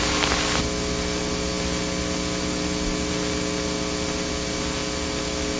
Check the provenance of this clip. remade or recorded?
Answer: recorded